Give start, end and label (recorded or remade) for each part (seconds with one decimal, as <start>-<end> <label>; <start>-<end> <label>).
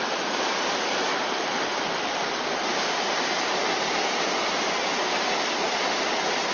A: 0.0-2.5 remade; 2.5-6.5 recorded